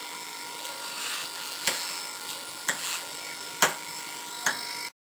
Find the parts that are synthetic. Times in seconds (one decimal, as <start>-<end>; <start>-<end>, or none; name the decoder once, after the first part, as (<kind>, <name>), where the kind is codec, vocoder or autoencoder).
0.0-0.7 (vocoder, BigVGAN v2); 1.2-4.3